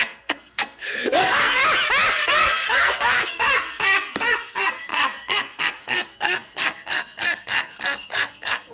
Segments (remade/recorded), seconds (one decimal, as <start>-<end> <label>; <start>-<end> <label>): 0.0-1.6 remade; 1.6-2.1 recorded; 2.1-8.7 remade